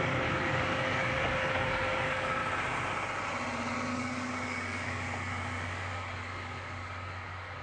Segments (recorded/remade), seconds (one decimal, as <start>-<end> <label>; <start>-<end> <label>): 0.0-2.4 remade; 2.4-3.9 recorded; 3.9-7.6 remade